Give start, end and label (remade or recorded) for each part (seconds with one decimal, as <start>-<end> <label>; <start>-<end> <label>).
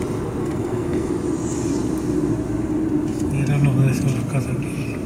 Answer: 0.0-0.4 recorded; 0.4-1.1 remade; 1.1-5.1 recorded